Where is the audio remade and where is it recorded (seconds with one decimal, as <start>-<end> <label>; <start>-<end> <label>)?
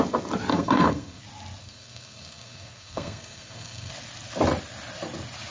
0.0-0.5 recorded; 0.5-1.2 remade; 1.2-1.6 recorded; 1.6-3.9 remade; 3.9-5.5 recorded